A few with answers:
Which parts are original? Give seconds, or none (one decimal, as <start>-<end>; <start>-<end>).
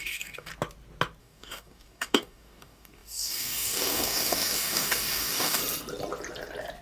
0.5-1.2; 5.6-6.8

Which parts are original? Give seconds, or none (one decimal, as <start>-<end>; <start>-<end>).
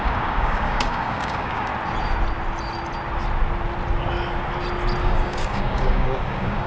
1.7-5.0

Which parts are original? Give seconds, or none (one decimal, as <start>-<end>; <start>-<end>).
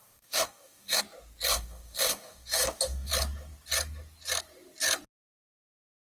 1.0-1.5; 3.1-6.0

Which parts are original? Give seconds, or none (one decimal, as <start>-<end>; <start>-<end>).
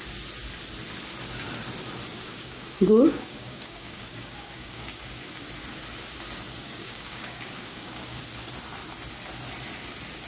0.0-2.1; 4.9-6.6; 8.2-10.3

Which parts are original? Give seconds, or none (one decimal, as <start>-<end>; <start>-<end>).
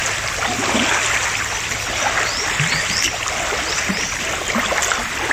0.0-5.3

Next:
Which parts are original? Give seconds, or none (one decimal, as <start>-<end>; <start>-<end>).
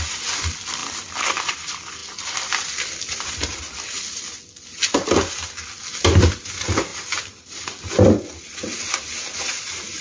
0.0-10.0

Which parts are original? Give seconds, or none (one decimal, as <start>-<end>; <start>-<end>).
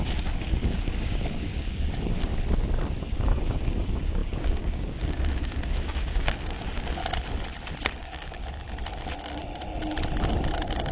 2.3-3.0; 7.0-7.9; 8.4-10.9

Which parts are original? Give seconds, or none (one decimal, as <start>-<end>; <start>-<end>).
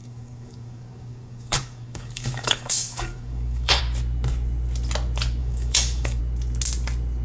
3.8-5.4; 6.2-7.2